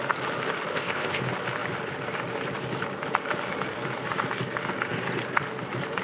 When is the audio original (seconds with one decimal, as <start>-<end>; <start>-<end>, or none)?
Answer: 0.0-0.7; 1.2-6.0